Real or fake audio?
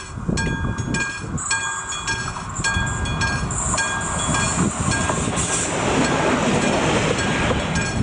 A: real